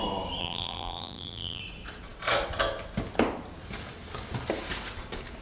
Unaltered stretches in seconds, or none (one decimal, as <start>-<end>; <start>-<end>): 0.0-0.4; 1.6-5.4